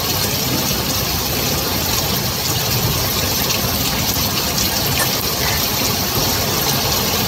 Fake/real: real